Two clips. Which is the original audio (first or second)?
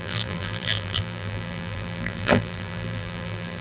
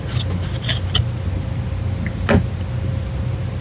second